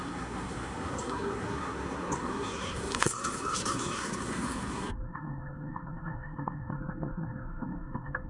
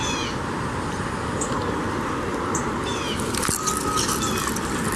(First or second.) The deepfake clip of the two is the first